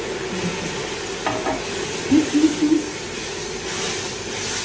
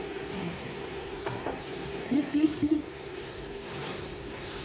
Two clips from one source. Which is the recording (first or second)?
first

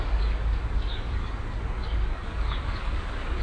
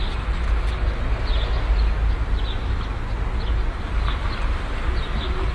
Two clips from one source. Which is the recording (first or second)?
second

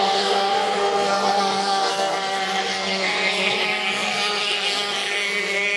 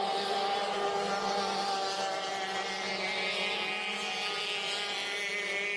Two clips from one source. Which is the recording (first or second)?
second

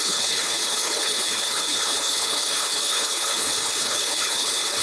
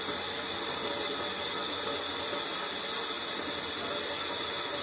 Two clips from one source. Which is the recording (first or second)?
second